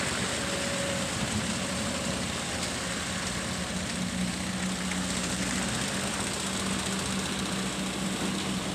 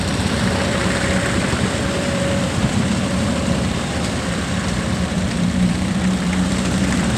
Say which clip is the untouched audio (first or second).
first